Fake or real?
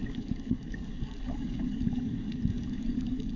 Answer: fake